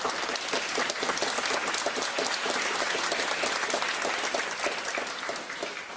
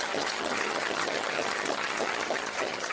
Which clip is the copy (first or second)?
second